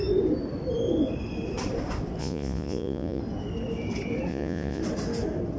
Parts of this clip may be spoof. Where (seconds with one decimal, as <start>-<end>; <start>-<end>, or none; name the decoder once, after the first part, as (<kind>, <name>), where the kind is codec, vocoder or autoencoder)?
2.2-3.2 (vocoder, Vocos); 4.3-4.8